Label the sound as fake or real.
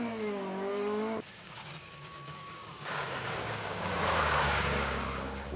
fake